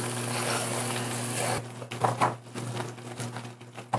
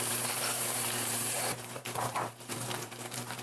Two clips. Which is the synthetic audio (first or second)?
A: second